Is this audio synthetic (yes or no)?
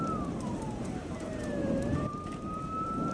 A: yes